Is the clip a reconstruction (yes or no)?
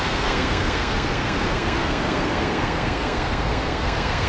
yes